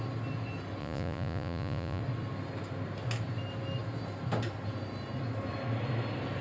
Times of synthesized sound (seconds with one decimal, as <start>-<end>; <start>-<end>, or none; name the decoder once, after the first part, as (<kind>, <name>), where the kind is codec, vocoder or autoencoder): 0.8-2.0 (vocoder, Vocos)